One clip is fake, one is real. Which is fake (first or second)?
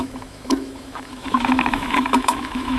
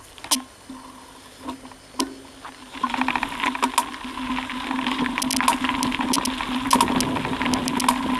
first